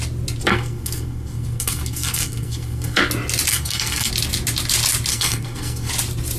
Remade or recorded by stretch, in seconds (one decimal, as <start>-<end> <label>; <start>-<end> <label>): 0.0-0.5 recorded; 0.5-3.0 remade; 3.0-3.5 recorded; 3.5-4.1 remade; 4.1-5.1 recorded; 5.1-5.9 remade; 5.9-6.4 recorded